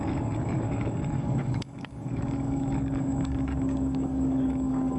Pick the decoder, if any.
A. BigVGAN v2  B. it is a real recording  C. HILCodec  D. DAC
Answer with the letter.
D